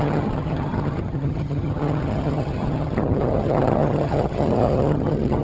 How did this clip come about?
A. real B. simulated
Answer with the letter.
B